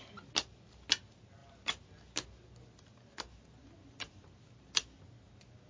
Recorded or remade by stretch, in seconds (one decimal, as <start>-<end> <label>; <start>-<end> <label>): 0.0-5.7 recorded